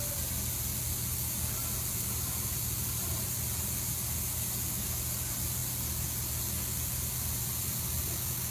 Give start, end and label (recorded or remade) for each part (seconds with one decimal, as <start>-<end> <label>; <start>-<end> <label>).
0.0-8.5 recorded